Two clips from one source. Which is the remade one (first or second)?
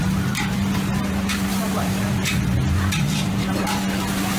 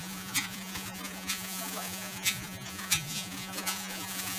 second